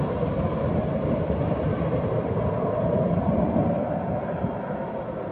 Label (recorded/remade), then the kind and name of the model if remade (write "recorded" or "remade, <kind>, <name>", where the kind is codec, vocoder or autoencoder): recorded